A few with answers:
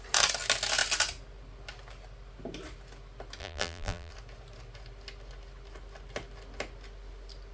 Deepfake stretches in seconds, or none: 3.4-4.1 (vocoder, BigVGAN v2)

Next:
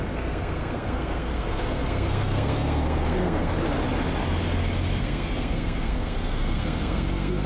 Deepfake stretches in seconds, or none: 0.0-3.5 (codec, SNAC); 5.0-7.5

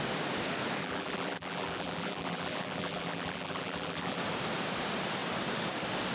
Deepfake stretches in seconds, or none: 0.8-4.2 (vocoder, BigVGAN v2)

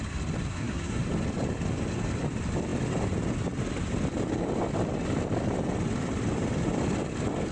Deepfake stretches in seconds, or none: 0.5-1.0 (codec, SNAC)

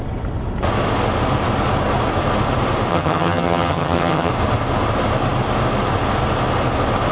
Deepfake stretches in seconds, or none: 2.9-4.3 (vocoder, HiFi-GAN)